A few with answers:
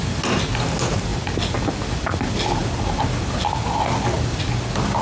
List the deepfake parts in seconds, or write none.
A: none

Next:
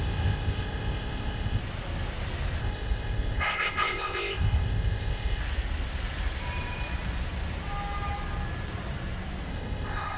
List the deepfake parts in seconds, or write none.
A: 0.0-1.6 (codec, ZipCodec); 2.6-5.4; 9.5-10.2

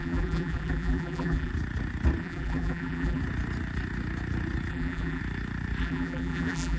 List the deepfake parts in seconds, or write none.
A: 0.0-1.5 (vocoder, BigVGAN v2); 2.2-3.2; 4.7-5.2; 5.8-6.8

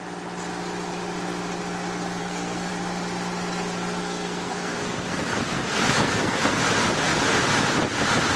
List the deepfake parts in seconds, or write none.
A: 2.2-2.7 (codec, SNAC); 4.0-6.6